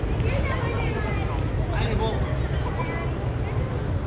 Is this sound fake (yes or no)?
no